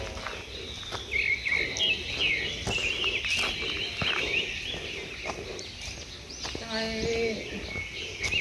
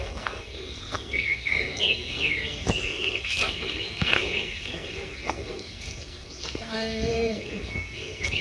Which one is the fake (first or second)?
second